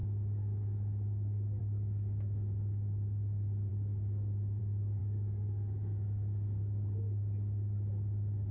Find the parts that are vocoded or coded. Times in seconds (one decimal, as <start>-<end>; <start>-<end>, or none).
0.0-1.6; 3.7-4.6